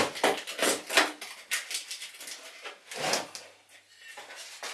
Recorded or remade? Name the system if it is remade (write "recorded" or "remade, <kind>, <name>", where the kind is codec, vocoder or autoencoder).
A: recorded